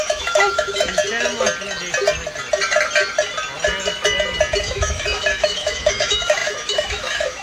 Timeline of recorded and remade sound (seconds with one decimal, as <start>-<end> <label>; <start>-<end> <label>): 0.0-1.0 remade; 1.0-4.6 recorded; 4.6-7.4 remade